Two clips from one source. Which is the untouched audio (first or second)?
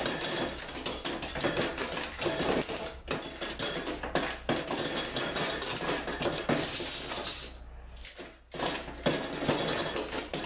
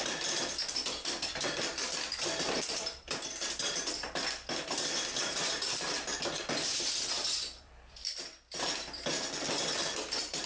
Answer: first